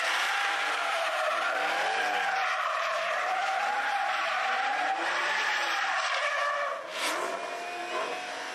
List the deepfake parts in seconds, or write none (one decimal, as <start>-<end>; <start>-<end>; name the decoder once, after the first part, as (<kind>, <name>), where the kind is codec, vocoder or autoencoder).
0.8-1.4 (vocoder, BigVGAN v2); 2.5-4.3; 4.7-6.5